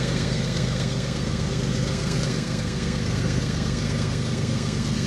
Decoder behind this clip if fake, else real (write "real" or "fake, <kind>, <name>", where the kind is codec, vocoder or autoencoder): fake, codec, SNAC